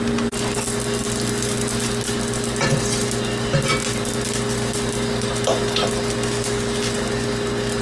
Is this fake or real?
real